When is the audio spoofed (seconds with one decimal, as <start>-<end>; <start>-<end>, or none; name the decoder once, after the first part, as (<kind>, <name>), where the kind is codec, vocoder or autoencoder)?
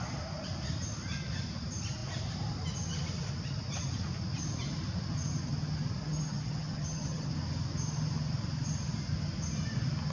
6.0-7.3 (vocoder, HiFi-GAN)